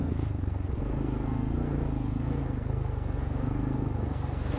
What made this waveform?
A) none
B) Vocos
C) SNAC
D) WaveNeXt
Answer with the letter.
C